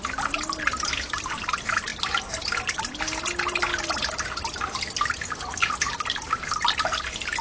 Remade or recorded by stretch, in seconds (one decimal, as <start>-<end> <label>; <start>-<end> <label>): 0.0-7.4 recorded